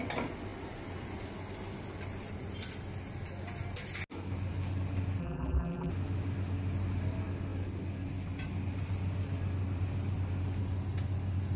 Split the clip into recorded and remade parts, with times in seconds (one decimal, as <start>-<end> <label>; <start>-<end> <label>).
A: 0.0-5.2 recorded; 5.2-5.9 remade; 5.9-11.6 recorded